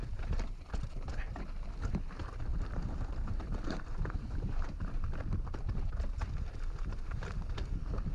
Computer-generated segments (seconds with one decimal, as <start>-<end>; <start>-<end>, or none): 0.0-0.5; 2.5-7.3